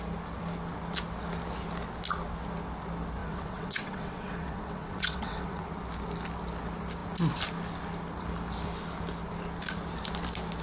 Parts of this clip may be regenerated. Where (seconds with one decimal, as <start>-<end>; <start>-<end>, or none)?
3.2-5.6